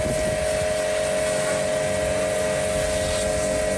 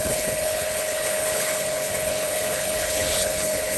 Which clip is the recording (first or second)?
first